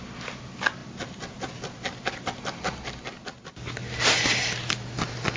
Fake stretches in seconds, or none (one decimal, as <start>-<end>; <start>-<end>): none